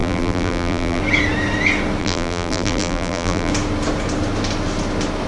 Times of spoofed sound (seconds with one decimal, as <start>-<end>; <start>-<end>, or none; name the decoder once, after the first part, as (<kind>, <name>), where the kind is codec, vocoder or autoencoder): 0.0-1.0 (vocoder, BigVGAN v2); 2.0-3.5